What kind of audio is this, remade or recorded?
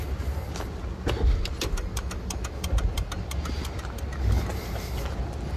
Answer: recorded